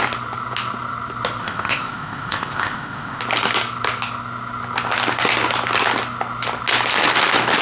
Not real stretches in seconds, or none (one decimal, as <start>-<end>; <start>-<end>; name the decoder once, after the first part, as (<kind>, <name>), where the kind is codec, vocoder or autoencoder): 1.4-3.2 (codec, ZipCodec)